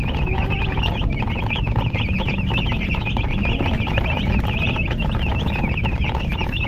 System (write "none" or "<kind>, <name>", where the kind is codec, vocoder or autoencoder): vocoder, Vocos